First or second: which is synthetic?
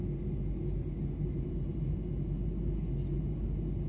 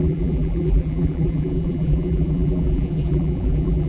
second